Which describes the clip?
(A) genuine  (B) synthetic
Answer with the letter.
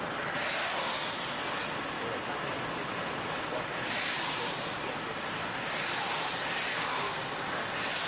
A